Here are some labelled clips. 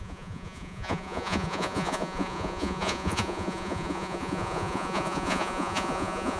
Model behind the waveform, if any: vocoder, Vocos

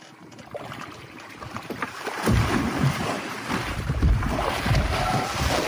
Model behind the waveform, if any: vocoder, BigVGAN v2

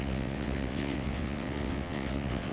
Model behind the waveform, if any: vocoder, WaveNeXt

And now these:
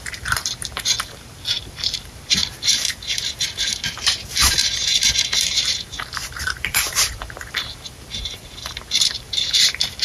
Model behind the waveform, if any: vocoder, BigVGAN v2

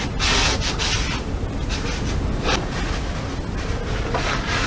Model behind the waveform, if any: none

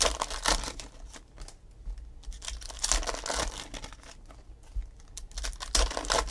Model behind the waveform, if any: none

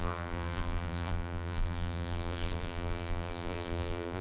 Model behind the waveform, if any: vocoder, BigVGAN v2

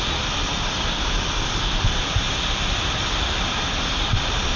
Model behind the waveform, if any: vocoder, BigVGAN v2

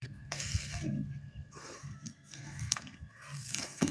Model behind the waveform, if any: codec, SNAC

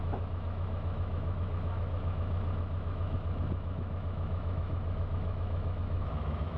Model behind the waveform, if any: autoencoder, DAC-VAE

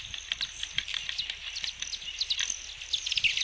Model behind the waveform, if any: none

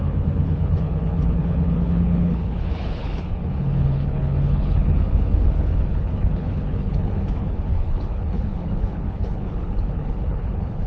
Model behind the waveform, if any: codec, HILCodec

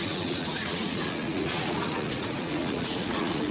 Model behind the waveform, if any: vocoder, Vocos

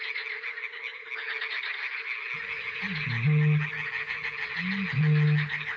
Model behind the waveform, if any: none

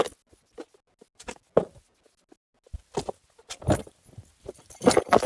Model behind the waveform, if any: none